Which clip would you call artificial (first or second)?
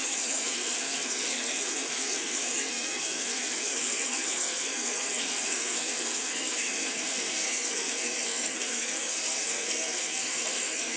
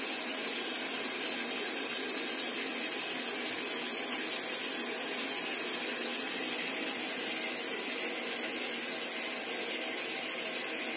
first